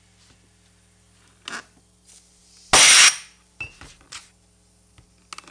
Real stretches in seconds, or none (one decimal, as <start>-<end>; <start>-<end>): 0.0-5.5